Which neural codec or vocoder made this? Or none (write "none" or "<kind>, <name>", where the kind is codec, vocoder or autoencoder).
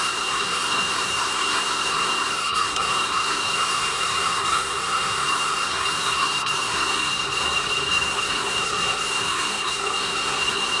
codec, SNAC